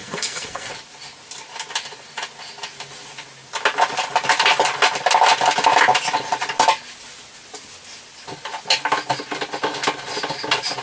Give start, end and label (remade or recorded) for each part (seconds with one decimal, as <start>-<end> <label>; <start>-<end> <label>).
0.0-0.7 remade; 0.7-10.8 recorded